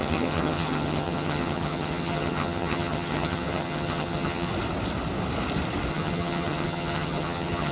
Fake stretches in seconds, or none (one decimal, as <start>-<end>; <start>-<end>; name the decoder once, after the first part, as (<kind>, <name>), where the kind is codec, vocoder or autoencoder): 0.0-4.5 (vocoder, HiFi-GAN); 5.9-7.7